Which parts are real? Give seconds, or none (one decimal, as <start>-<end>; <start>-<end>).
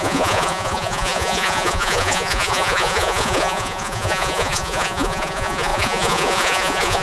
none